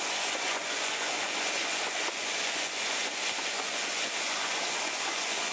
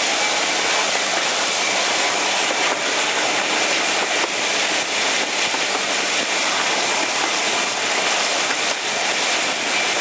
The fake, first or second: first